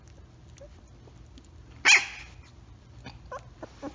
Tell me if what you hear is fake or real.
real